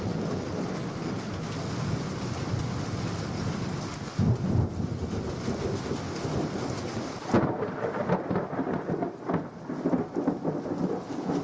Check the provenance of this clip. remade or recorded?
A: recorded